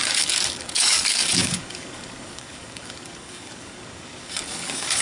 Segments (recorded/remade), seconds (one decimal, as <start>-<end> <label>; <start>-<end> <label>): 0.0-5.0 remade